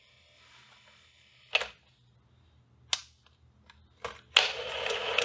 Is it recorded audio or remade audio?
recorded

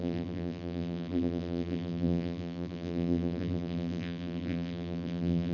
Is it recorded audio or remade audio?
remade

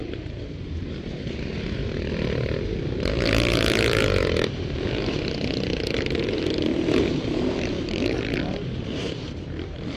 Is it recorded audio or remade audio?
remade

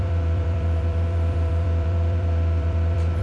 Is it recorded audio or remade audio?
remade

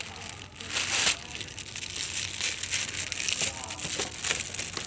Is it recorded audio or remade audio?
recorded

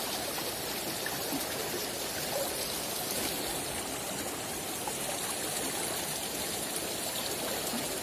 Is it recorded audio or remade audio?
remade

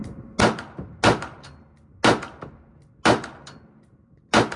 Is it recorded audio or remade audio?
recorded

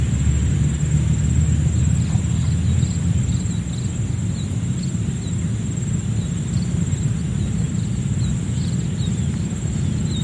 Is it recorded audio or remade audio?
recorded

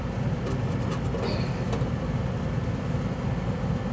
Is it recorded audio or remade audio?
recorded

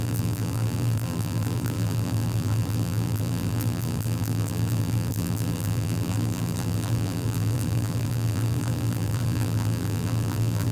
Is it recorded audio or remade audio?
remade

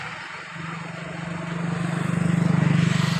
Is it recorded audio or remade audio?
recorded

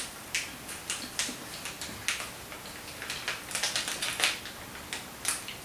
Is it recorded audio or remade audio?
recorded